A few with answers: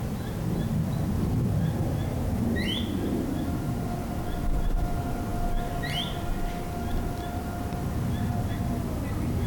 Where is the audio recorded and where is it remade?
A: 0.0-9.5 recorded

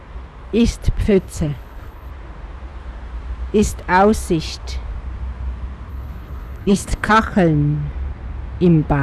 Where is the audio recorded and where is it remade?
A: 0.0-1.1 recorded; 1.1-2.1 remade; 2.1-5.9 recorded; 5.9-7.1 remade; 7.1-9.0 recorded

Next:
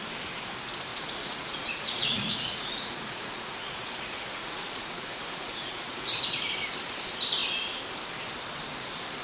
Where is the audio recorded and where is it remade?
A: 0.0-0.9 recorded; 0.9-6.0 remade; 6.0-9.2 recorded

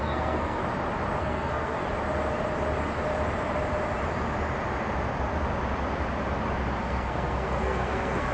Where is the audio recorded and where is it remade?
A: 0.0-0.6 remade; 0.6-1.2 recorded; 1.2-1.8 remade; 1.8-6.8 recorded; 6.8-8.3 remade

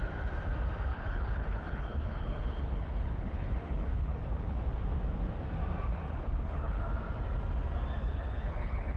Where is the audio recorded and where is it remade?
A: 0.0-0.9 recorded; 0.9-4.6 remade; 4.6-5.9 recorded; 5.9-6.8 remade; 6.8-8.0 recorded; 8.0-9.0 remade

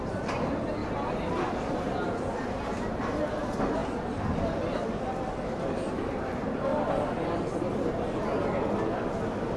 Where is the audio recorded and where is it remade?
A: 0.0-9.6 recorded

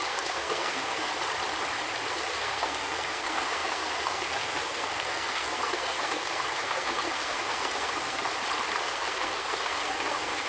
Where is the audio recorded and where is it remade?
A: 0.0-1.1 remade; 1.1-2.1 recorded; 2.1-8.3 remade; 8.3-8.8 recorded; 8.8-10.5 remade